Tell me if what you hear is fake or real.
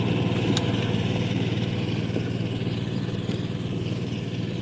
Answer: real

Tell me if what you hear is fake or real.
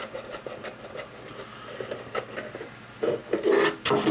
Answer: real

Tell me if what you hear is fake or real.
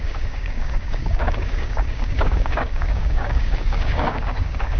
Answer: fake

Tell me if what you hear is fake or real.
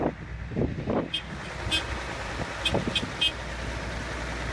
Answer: real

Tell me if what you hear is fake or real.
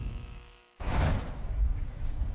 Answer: fake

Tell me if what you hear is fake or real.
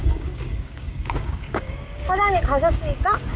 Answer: fake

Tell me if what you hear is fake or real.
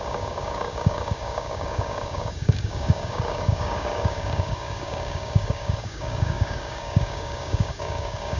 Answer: fake